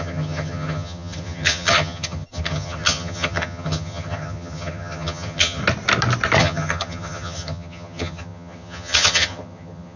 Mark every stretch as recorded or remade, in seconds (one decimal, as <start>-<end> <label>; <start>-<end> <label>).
0.0-5.6 remade; 5.6-6.4 recorded; 6.4-10.0 remade

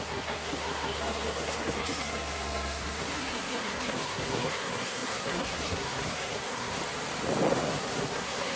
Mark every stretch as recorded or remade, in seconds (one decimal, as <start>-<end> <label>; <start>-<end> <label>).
0.0-6.8 remade; 6.8-7.5 recorded; 7.5-8.6 remade

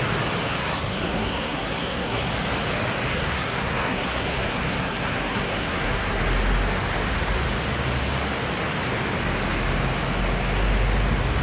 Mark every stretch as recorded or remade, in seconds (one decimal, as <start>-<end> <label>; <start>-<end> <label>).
0.0-0.6 recorded; 0.6-2.3 remade; 2.3-3.1 recorded; 3.1-6.2 remade; 6.2-11.4 recorded

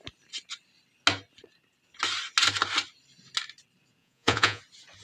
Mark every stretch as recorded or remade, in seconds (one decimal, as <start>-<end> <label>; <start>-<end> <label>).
0.0-4.0 recorded; 4.0-4.6 remade; 4.6-5.0 recorded

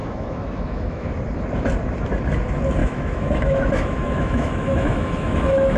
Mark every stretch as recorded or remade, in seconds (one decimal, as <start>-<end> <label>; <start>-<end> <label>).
0.0-1.1 remade; 1.1-2.8 recorded; 2.8-5.8 remade

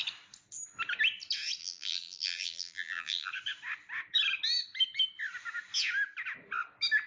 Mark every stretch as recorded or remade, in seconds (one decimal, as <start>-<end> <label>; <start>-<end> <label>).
0.0-1.6 recorded; 1.6-3.3 remade; 3.3-7.1 recorded